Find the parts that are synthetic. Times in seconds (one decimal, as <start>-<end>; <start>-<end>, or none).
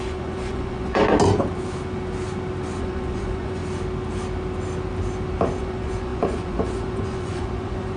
0.0-1.0; 2.8-3.6; 5.6-8.0